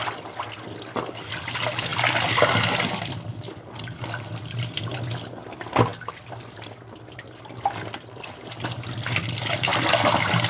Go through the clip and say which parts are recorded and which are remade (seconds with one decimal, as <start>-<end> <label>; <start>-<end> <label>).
0.0-5.9 recorded; 5.9-7.4 remade; 7.4-9.7 recorded; 9.7-10.5 remade